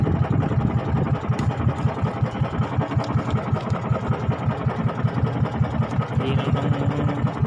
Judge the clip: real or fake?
real